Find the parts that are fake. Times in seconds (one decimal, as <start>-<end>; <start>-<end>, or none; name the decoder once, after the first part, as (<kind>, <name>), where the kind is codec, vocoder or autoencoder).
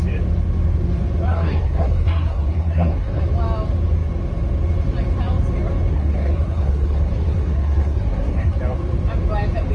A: 1.3-3.2 (codec, SNAC); 5.9-8.6